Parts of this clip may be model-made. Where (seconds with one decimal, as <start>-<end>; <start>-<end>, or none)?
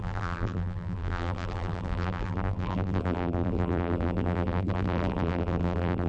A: 0.0-6.1